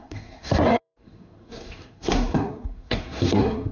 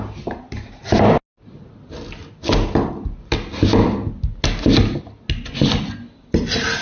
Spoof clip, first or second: first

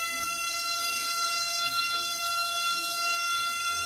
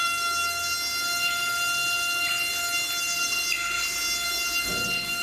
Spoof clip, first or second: first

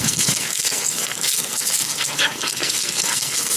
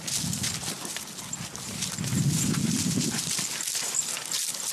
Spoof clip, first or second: first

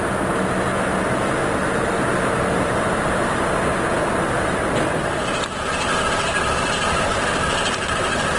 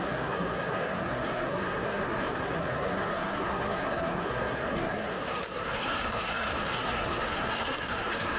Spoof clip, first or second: second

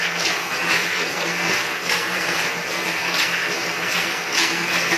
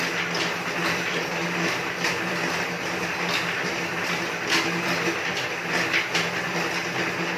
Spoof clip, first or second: first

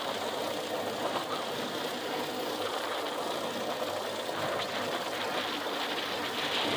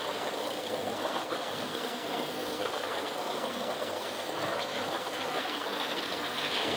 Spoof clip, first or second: second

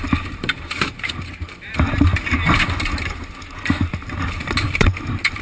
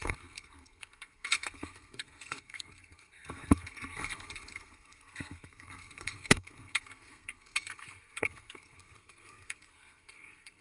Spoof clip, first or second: second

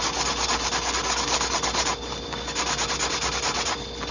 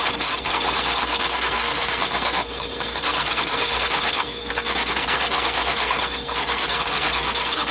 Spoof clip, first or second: second